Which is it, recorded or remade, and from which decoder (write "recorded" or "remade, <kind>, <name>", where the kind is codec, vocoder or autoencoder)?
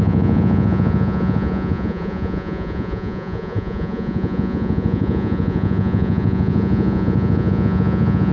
remade, vocoder, Vocos